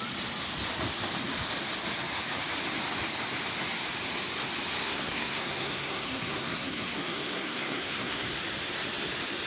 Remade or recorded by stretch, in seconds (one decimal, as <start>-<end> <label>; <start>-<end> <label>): 0.0-4.8 recorded; 4.8-8.4 remade; 8.4-9.5 recorded